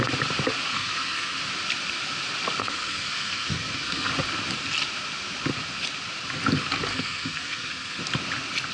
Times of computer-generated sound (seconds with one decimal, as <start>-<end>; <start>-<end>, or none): 0.7-1.4; 2.6-4.1; 6.9-8.0